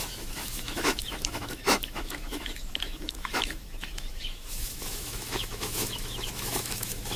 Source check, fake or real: fake